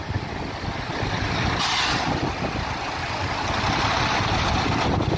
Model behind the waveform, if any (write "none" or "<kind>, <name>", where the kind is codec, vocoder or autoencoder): none